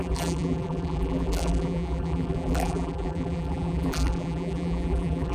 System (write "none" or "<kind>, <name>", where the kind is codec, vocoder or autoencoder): vocoder, BigVGAN v2